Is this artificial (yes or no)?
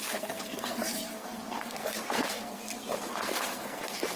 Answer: yes